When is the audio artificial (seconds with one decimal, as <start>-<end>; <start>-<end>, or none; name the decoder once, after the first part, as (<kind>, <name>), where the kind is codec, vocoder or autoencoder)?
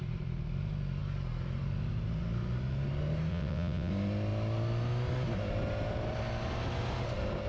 3.3-3.9 (vocoder, WaveNeXt)